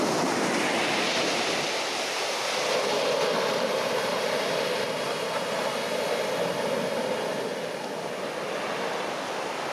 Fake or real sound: real